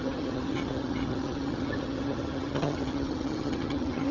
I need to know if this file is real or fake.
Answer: fake